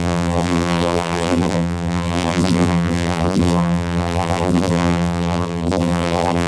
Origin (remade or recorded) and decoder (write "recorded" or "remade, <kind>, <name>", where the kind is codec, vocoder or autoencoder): remade, vocoder, BigVGAN v2